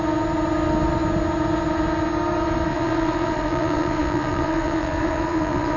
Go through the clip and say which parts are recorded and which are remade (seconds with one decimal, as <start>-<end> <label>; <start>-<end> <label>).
0.0-2.7 recorded; 2.7-5.8 remade